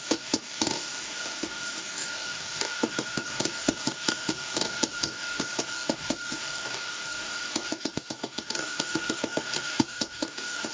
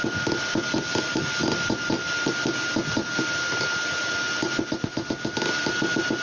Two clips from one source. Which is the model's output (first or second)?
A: first